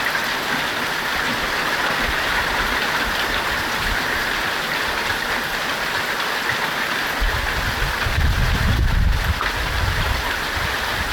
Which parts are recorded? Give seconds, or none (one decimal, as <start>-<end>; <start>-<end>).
0.0-11.1